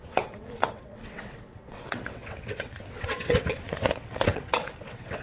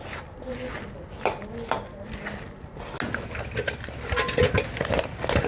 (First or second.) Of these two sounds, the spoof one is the first